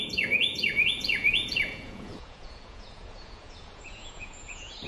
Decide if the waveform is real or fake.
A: fake